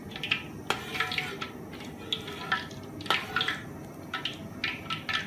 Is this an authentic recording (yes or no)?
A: yes